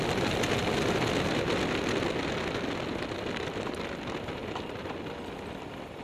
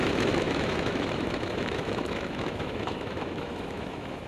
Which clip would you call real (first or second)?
first